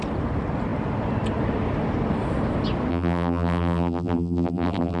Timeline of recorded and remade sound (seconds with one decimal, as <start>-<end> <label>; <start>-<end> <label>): 0.0-2.9 recorded; 2.9-5.0 remade